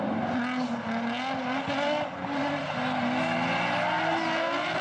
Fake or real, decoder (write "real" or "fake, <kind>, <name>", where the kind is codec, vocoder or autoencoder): real